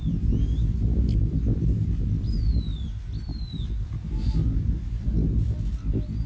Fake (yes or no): no